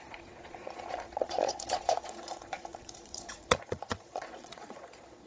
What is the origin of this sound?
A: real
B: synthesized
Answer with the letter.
B